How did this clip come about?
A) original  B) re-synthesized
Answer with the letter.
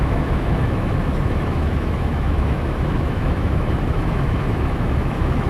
B